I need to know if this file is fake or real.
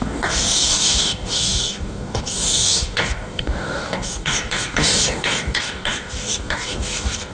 fake